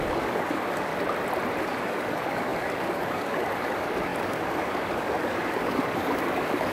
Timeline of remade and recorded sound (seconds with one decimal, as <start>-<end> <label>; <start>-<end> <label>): 0.0-0.9 remade; 0.9-1.6 recorded; 1.6-6.7 remade